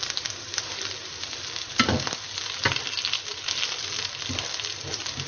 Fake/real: real